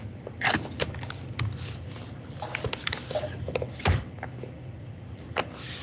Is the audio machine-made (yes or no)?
no